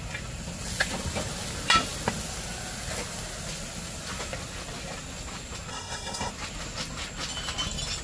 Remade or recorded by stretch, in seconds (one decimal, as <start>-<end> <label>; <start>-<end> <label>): 0.0-5.7 recorded; 5.7-6.3 remade; 6.3-8.0 recorded